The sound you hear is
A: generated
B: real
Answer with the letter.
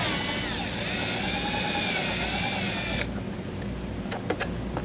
B